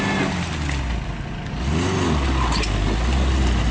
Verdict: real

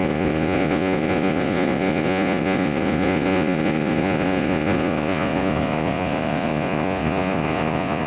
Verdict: fake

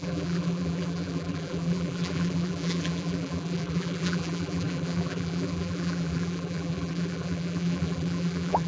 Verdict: fake